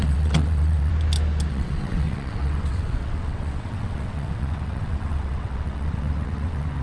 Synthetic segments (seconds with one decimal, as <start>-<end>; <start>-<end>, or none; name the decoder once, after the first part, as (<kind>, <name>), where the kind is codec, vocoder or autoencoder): 0.0-0.9 (vocoder, WaveNeXt); 1.5-6.8